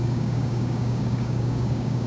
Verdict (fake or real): fake